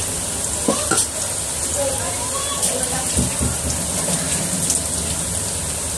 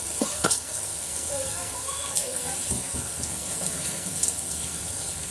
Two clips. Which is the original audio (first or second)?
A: first